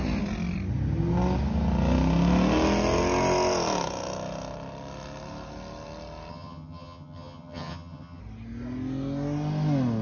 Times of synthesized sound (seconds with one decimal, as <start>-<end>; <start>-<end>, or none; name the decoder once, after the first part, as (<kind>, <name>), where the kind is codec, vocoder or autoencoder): 6.3-8.2 (vocoder, HiFi-GAN)